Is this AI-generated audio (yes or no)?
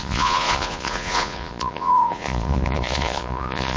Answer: yes